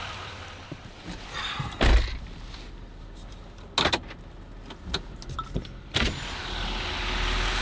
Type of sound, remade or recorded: recorded